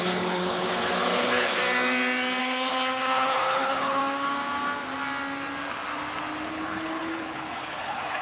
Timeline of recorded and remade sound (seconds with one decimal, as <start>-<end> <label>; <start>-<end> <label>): 0.0-1.6 remade; 1.6-2.4 recorded; 2.4-4.0 remade; 4.0-6.5 recorded; 6.5-8.2 remade

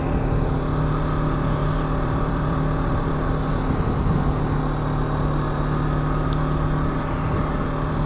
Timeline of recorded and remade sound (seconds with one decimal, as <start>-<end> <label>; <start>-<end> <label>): 0.0-1.6 recorded; 1.6-3.1 remade; 3.1-8.1 recorded

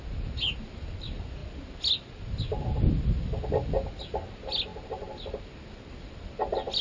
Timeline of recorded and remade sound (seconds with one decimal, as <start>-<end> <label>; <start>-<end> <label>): 0.0-6.8 recorded

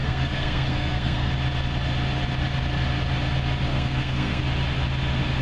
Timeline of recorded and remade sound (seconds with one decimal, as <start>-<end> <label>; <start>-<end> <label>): 0.0-1.3 remade; 1.3-3.7 recorded; 3.7-4.4 remade; 4.4-5.4 recorded